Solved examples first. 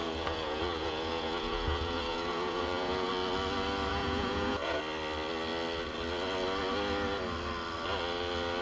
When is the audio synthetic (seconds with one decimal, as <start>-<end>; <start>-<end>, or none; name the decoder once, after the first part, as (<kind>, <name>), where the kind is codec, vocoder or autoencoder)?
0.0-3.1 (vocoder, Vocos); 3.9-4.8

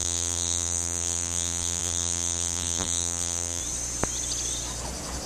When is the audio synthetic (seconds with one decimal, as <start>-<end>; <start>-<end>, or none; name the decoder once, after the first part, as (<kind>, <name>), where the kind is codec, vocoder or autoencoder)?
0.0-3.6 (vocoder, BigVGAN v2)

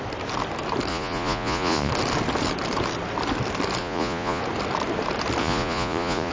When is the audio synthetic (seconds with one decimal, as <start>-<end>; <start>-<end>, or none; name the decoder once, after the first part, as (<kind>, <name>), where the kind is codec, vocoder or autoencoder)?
0.9-1.9 (vocoder, Vocos); 3.8-4.4; 5.4-6.3

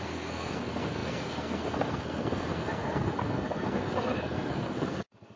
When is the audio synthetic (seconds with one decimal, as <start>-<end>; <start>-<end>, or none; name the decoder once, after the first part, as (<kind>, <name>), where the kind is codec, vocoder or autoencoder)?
0.0-5.4 (codec, SNAC)

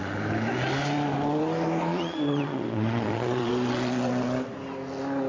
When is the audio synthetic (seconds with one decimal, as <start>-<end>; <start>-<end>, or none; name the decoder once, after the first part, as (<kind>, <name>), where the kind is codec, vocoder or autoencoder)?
1.9-3.5 (vocoder, Vocos)

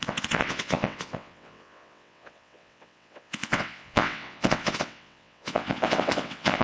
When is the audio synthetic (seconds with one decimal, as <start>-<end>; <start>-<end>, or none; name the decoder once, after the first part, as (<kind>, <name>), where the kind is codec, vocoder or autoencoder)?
0.0-6.6 (vocoder, WaveNeXt)

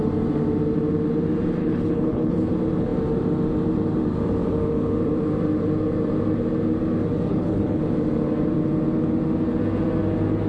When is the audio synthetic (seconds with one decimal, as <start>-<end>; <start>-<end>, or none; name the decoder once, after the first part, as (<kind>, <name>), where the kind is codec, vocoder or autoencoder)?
1.6-2.5 (codec, HILCodec); 7.3-7.8

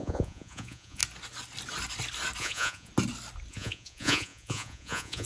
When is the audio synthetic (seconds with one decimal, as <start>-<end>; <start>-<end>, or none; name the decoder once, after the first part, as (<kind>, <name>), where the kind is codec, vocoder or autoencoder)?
0.0-1.0 (vocoder, Vocos); 2.4-2.9; 3.5-5.3